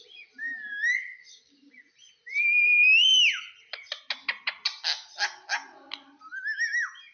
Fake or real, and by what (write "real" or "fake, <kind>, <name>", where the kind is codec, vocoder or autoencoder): real